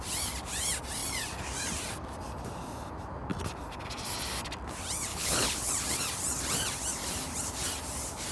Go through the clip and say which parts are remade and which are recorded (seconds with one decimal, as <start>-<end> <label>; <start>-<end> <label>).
0.0-5.1 recorded; 5.1-5.7 remade; 5.7-8.3 recorded